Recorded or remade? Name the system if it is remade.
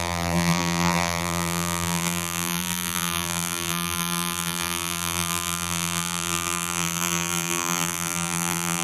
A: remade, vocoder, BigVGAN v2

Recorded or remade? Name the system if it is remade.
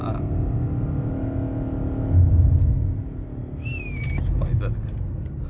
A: recorded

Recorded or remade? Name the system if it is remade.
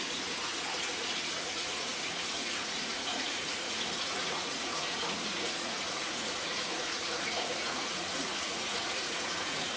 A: remade, vocoder, Vocos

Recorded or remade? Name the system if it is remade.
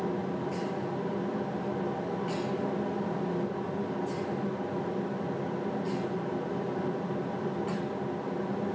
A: recorded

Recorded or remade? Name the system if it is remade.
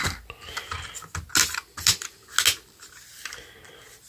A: recorded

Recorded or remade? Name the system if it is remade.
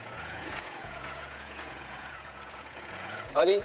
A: remade, vocoder, Vocos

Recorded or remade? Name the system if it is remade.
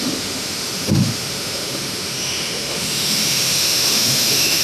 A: remade, autoencoder, DAC-VAE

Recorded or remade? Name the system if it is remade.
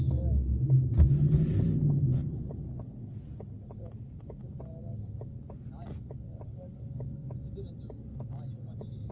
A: recorded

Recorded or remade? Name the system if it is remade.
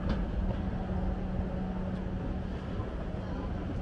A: recorded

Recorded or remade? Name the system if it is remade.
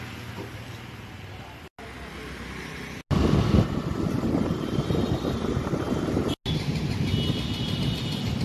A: recorded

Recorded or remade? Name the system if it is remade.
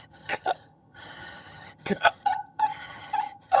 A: remade, vocoder, HiFi-GAN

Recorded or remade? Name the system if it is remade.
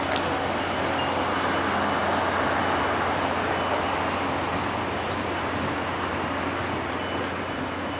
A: recorded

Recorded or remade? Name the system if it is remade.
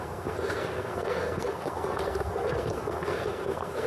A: remade, codec, SNAC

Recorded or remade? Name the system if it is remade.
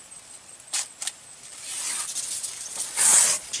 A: remade, vocoder, BigVGAN v2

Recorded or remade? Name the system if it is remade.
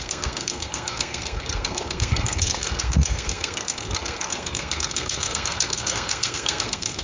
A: remade, codec, SNAC